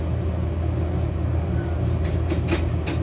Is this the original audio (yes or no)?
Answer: yes